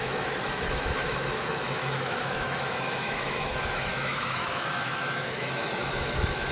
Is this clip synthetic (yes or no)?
yes